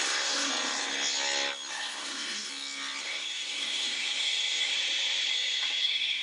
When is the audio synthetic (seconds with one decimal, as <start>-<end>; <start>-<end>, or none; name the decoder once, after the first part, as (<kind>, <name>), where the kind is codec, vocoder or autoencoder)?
0.0-0.5 (codec, SNAC); 1.7-2.5; 3.0-4.7; 5.3-6.2